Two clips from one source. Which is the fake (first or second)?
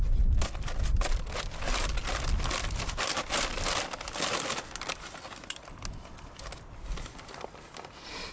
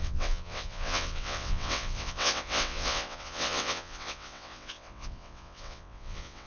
second